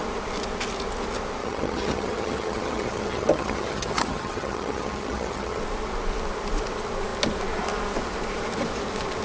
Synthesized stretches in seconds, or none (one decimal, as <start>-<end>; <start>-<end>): 1.4-5.6